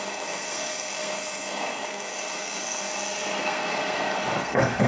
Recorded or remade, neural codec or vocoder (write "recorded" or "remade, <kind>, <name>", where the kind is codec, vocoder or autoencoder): remade, codec, SNAC